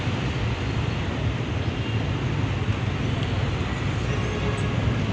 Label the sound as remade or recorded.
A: recorded